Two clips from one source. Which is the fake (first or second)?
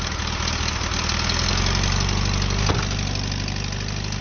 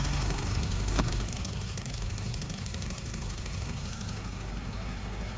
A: second